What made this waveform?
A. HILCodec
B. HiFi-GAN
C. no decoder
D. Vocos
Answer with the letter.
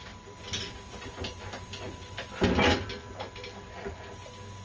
C